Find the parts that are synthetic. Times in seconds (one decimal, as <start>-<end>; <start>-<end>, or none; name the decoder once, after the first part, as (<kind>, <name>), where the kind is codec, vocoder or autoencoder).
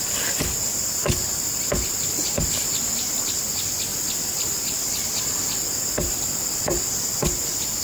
3.9-6.8 (vocoder, BigVGAN v2)